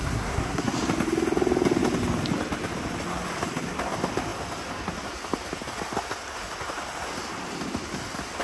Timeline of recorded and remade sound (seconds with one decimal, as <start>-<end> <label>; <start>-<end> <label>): 0.0-0.7 remade; 0.7-8.4 recorded